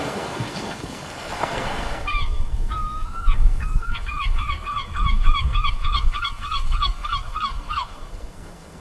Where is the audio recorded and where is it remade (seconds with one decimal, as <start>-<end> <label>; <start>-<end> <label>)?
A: 0.0-8.8 remade